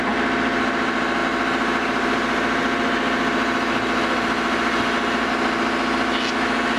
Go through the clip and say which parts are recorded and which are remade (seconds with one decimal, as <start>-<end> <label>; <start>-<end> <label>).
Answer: 0.0-6.8 recorded